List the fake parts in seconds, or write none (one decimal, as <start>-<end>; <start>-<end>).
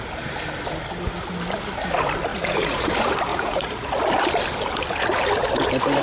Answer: 2.3-2.9; 3.3-4.0